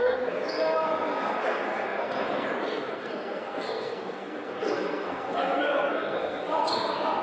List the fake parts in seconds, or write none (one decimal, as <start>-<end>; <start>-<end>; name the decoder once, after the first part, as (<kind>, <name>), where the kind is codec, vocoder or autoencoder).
0.0-7.2 (codec, SNAC)